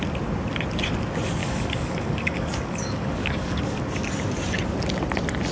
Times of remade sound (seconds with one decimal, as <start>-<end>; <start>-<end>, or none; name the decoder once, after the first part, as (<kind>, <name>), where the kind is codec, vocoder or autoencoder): 1.4-3.8 (codec, DAC)